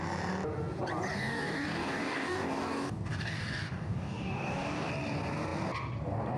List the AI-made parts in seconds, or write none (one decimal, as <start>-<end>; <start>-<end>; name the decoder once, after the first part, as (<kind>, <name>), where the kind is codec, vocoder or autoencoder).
1.1-4.9 (codec, DAC)